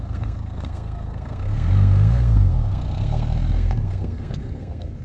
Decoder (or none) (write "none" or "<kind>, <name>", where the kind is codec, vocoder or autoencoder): codec, SNAC